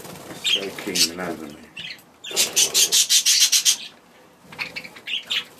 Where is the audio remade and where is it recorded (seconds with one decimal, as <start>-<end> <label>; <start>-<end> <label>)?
0.0-1.3 recorded; 1.3-4.7 remade; 4.7-5.6 recorded